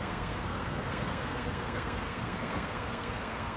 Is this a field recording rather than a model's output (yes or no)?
no